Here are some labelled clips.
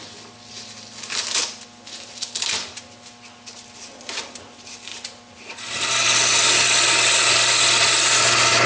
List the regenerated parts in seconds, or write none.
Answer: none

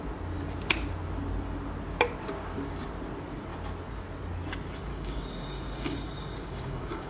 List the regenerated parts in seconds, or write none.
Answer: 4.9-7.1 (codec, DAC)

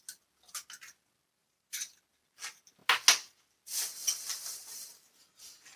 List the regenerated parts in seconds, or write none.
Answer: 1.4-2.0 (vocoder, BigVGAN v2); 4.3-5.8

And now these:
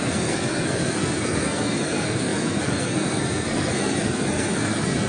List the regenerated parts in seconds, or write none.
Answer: 0.0-5.1 (codec, SNAC)